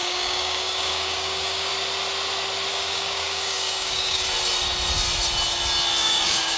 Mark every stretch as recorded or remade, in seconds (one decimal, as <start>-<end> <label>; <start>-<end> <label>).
0.0-1.7 remade; 1.7-2.7 recorded; 2.7-4.2 remade; 4.2-6.0 recorded; 6.0-6.6 remade